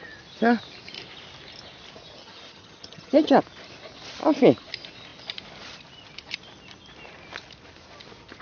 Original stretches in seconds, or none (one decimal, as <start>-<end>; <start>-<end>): 0.0-2.2; 3.4-8.4